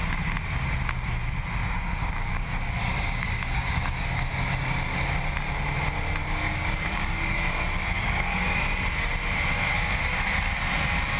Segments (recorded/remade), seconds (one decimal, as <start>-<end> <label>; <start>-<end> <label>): 0.0-1.6 recorded; 1.6-4.3 remade; 4.3-6.2 recorded; 6.2-8.6 remade; 8.6-9.7 recorded; 9.7-10.6 remade; 10.6-11.2 recorded